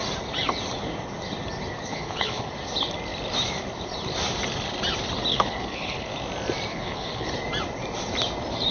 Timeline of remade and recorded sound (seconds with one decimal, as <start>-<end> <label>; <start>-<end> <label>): 0.0-1.9 recorded; 1.9-2.5 remade; 2.5-5.3 recorded; 5.3-6.1 remade; 6.1-6.7 recorded; 6.7-7.3 remade; 7.3-8.7 recorded